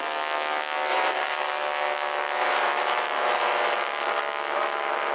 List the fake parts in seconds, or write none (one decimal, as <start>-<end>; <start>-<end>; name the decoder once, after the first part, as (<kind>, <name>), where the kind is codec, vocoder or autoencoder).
0.9-1.5 (vocoder, BigVGAN v2); 2.4-4.2